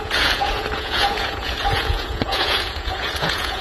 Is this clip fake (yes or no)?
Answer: yes